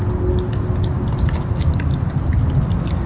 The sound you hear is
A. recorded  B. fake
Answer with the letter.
A